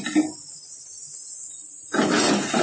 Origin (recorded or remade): recorded